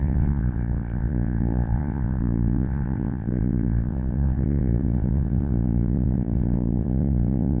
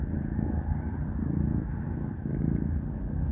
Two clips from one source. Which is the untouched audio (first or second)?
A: second